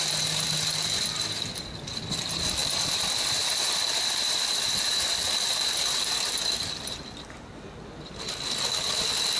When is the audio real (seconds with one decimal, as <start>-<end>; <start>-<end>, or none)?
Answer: 0.0-2.6; 6.6-9.4